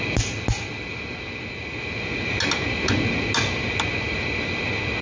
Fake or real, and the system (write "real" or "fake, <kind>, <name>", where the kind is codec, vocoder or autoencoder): real